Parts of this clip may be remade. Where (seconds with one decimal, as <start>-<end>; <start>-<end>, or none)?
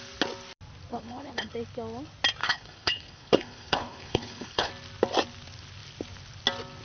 0.9-1.5; 2.4-4.7